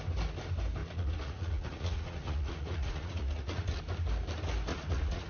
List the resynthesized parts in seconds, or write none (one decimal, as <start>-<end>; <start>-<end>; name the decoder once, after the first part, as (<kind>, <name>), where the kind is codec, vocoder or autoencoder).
0.8-3.8 (vocoder, Vocos); 4.7-5.3